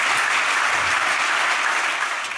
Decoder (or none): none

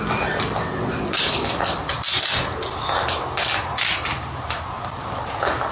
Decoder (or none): none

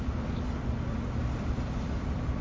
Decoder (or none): none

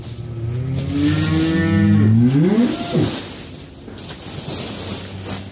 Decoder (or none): none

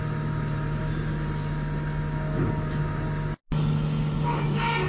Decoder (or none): none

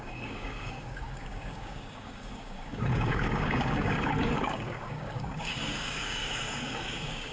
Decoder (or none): codec, DAC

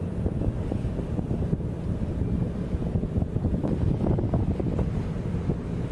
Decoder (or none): none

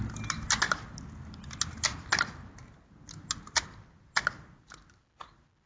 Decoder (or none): none